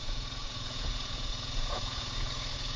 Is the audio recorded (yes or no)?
no